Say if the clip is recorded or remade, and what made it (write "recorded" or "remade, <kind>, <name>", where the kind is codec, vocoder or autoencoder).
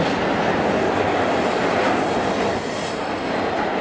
recorded